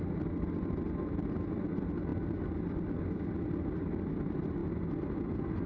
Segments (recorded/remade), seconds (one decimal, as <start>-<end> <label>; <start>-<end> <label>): 0.0-5.7 recorded